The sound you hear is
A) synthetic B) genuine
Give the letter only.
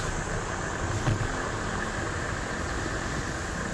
B